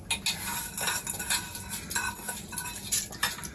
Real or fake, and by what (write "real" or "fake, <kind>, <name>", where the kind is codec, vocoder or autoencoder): real